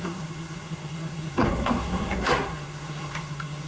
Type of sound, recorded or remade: remade